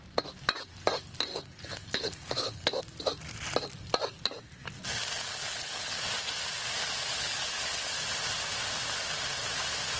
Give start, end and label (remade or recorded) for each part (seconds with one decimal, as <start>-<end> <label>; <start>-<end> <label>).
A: 0.0-1.3 recorded; 1.3-2.8 remade; 2.8-5.3 recorded; 5.3-6.0 remade; 6.0-7.1 recorded; 7.1-7.9 remade; 7.9-10.0 recorded